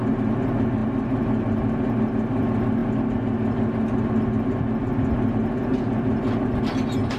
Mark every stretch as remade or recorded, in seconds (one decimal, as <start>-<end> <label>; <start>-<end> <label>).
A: 0.0-7.2 recorded